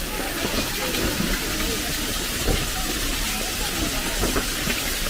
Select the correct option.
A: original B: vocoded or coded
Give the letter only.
A